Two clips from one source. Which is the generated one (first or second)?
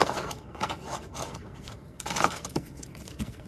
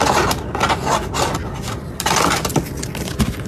first